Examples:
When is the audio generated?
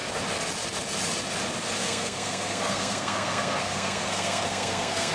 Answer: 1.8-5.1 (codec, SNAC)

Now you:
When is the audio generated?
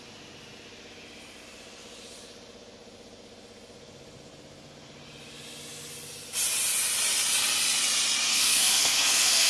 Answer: 8.3-9.5 (codec, SNAC)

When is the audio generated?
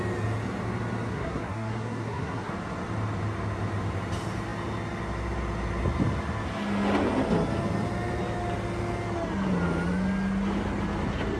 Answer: 1.1-2.5 (codec, SNAC)